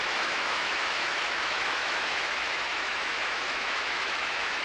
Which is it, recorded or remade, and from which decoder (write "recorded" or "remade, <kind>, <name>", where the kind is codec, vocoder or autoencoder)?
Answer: remade, autoencoder, DAC-VAE